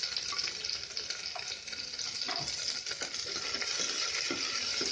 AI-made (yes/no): no